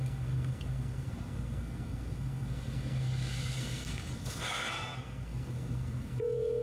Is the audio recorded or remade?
remade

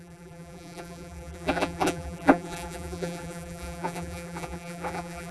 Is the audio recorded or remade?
remade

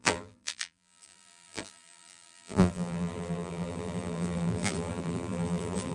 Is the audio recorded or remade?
remade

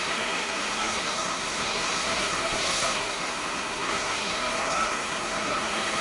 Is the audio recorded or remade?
remade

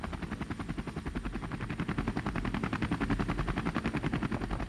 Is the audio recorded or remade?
recorded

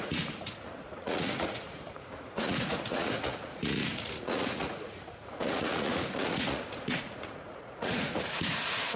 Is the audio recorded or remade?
remade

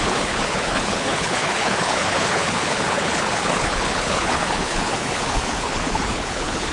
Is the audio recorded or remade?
remade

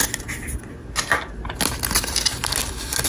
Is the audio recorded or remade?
recorded